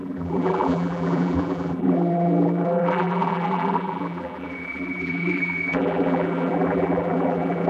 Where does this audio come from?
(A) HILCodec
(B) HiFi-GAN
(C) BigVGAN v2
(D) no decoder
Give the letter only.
C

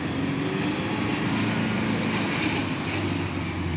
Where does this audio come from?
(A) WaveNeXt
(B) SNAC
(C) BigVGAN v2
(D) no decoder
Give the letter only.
D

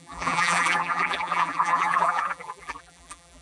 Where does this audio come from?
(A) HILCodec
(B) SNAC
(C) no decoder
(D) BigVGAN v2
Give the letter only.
D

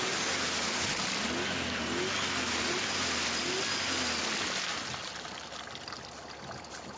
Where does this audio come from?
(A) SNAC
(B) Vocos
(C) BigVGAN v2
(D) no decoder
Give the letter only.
D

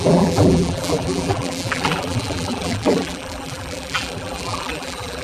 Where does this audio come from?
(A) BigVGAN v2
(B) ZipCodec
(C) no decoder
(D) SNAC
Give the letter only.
A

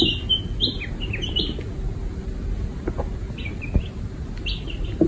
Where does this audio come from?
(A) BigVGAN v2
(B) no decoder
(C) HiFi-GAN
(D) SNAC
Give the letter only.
B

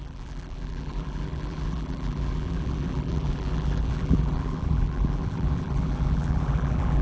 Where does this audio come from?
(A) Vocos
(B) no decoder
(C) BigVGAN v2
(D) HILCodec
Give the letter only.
C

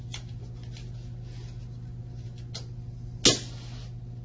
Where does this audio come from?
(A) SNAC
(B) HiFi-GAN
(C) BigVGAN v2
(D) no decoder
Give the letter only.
D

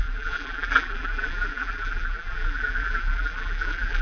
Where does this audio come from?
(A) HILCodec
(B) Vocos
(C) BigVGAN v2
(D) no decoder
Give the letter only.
C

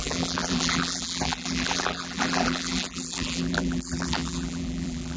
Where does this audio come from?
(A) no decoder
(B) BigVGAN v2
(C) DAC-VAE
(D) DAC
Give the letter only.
B